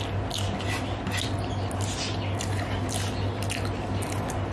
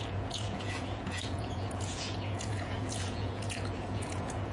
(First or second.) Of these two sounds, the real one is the first